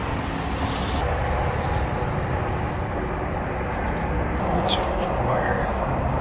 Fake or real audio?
real